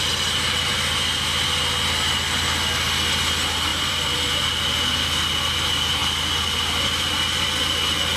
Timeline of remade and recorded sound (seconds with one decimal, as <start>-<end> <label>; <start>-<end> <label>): 0.0-3.7 recorded; 3.7-4.4 remade; 4.4-8.2 recorded